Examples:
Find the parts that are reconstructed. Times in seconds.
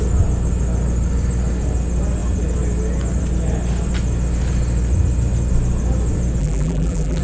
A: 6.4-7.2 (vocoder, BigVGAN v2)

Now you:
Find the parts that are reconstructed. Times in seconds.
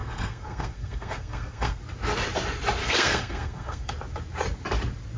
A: 0.0-1.8 (codec, SNAC); 2.8-3.9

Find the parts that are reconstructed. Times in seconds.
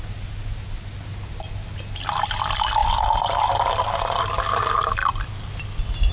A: none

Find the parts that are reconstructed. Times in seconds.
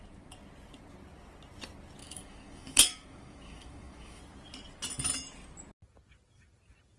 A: 2.0-4.2 (autoencoder, DAC-VAE)